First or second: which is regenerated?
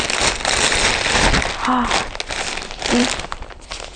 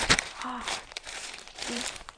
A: second